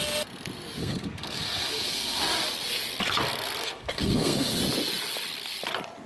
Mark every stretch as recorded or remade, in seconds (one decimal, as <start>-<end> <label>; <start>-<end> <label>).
0.0-0.8 recorded; 0.8-2.2 remade; 2.2-3.6 recorded; 3.6-4.6 remade; 4.6-6.1 recorded